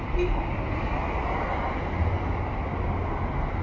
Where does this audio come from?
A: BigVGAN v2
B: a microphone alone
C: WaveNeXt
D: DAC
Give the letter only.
B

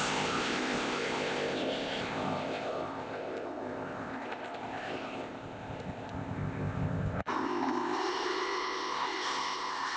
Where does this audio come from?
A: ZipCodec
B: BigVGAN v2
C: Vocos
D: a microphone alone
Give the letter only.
A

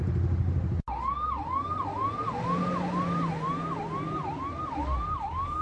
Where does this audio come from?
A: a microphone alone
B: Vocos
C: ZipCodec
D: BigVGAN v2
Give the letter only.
A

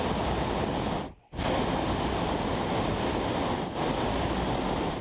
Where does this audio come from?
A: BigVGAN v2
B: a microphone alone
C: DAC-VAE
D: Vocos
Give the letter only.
B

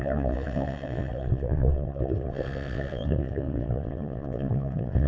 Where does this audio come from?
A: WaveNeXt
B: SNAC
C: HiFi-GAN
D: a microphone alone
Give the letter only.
A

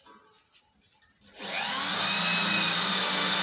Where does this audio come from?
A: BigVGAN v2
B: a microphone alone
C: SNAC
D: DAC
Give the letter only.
B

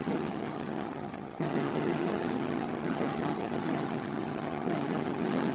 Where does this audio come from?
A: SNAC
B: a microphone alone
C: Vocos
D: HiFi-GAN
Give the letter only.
D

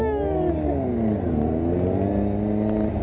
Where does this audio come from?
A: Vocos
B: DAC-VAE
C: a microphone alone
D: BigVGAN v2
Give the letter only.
C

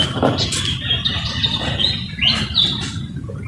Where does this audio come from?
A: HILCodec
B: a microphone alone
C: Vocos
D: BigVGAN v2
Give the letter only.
B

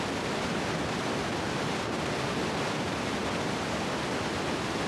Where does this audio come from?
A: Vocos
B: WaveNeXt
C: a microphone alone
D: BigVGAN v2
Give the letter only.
C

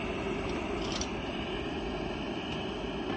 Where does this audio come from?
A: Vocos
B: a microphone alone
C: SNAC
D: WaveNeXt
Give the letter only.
B